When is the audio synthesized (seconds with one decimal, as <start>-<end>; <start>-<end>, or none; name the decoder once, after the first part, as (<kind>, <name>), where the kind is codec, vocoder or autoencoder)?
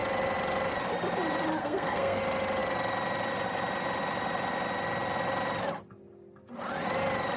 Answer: 1.6-2.2 (codec, SNAC)